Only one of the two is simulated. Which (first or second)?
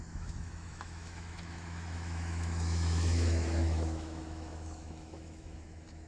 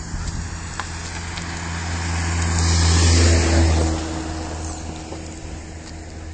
first